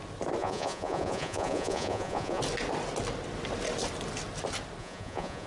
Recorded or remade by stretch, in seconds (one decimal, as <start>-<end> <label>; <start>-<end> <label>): 0.0-0.4 recorded; 0.4-2.4 remade; 2.4-4.8 recorded; 4.8-5.5 remade